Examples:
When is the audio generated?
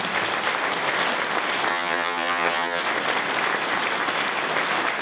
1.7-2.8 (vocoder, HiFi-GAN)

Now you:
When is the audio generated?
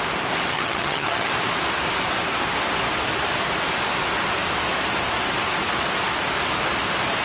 0.5-1.3 (vocoder, HiFi-GAN)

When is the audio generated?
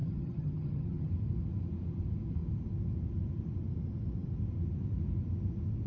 0.0-1.1 (vocoder, HiFi-GAN)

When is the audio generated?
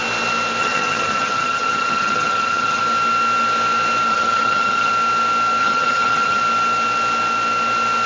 0.6-2.8 (vocoder, HiFi-GAN); 4.1-4.9; 5.6-6.4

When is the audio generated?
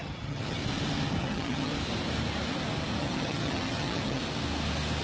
0.0-0.6 (vocoder, HiFi-GAN); 1.2-1.7; 3.0-4.2